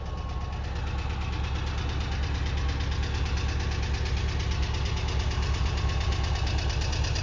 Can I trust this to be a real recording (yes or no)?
yes